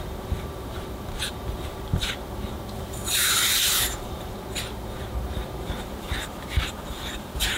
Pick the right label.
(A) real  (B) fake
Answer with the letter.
B